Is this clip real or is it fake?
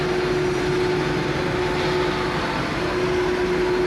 real